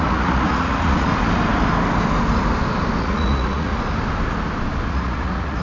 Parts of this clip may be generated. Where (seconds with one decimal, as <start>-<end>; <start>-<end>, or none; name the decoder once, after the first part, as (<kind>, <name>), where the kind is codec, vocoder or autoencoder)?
0.0-1.1 (vocoder, Vocos); 3.0-3.7; 4.9-5.6